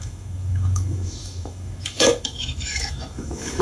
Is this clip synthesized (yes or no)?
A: yes